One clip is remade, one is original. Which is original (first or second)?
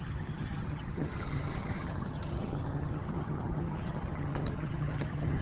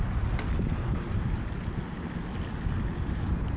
second